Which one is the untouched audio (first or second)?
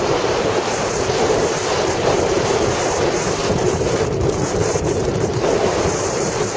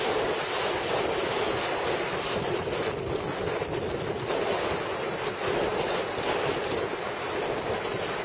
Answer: second